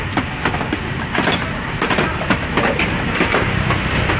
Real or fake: fake